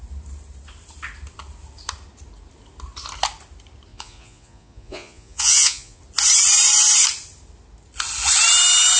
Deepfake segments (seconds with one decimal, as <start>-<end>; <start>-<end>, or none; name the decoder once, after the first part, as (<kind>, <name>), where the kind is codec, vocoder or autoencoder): 3.9-6.0 (vocoder, Vocos)